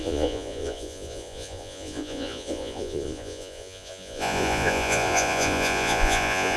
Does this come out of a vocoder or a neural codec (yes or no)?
yes